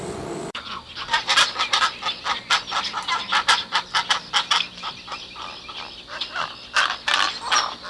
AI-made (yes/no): no